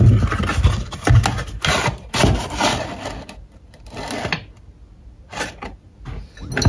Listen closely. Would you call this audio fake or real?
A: real